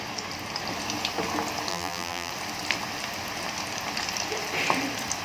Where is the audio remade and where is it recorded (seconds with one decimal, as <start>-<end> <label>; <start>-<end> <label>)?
0.0-1.7 recorded; 1.7-2.3 remade; 2.3-5.2 recorded